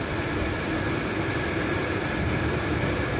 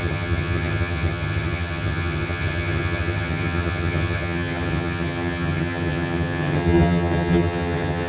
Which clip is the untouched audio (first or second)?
first